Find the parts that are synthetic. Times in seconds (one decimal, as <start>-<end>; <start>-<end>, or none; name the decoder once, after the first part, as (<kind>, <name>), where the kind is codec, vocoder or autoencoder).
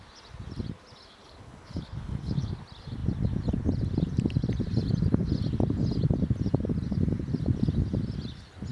1.2-2.5 (codec, HILCodec)